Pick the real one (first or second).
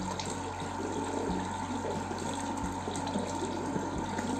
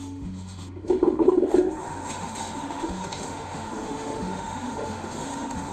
first